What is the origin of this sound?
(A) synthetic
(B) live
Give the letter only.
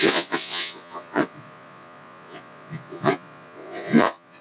A